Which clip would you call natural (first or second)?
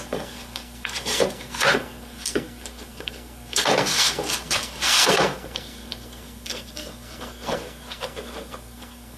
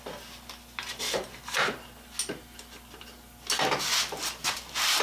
second